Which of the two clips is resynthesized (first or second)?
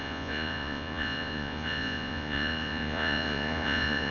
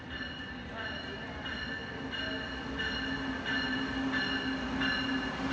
first